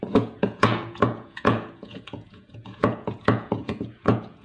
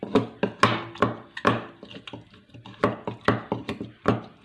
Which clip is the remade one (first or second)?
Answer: first